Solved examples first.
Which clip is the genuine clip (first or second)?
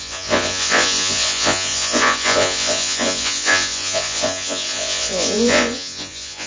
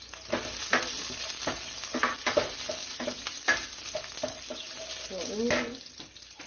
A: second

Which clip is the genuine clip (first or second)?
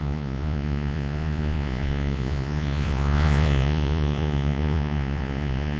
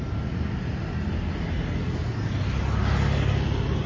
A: second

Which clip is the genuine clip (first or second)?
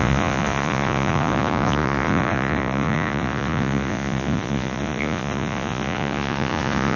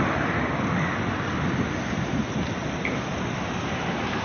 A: second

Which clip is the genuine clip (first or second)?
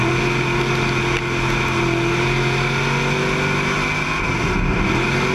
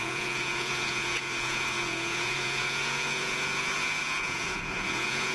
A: first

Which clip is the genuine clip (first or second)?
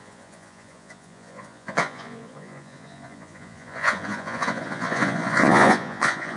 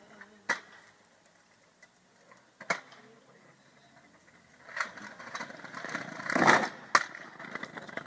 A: second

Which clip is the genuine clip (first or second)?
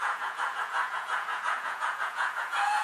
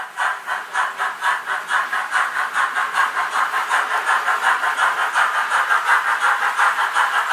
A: second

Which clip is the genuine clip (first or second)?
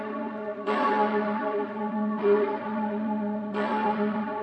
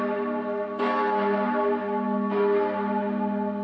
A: second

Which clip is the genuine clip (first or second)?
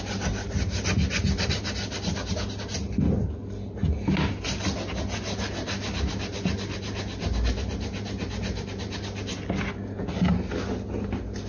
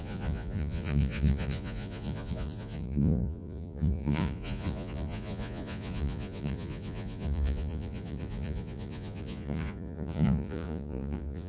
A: first